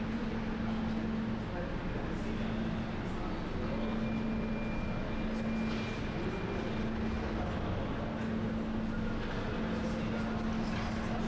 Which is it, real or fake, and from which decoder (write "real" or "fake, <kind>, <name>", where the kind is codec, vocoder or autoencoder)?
real